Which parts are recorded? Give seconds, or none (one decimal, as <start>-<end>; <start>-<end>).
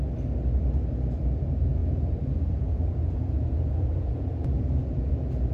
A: 0.0-1.8; 5.1-5.5